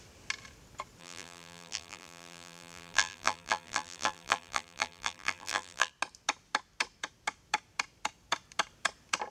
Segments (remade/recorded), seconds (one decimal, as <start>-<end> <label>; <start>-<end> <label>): 0.0-1.0 recorded; 1.0-5.9 remade; 5.9-9.3 recorded